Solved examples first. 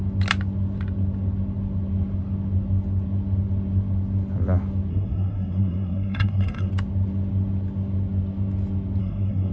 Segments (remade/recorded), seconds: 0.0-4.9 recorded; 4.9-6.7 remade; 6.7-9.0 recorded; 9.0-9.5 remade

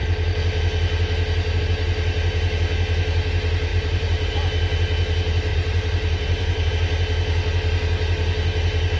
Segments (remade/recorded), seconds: 0.0-3.7 recorded; 3.7-4.3 remade; 4.3-5.5 recorded; 5.5-6.7 remade; 6.7-9.0 recorded

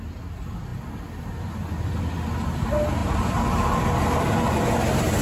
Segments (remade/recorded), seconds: 0.0-5.2 recorded

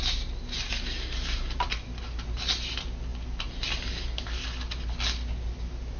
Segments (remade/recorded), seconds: 0.0-6.0 recorded